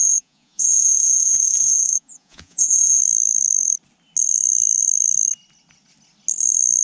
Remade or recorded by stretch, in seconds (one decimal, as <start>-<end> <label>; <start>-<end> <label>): 0.0-3.0 remade; 3.0-6.8 recorded